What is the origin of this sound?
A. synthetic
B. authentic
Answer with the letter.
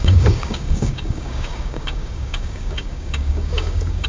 A